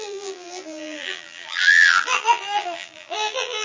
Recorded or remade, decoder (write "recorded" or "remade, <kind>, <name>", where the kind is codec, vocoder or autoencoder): remade, vocoder, BigVGAN v2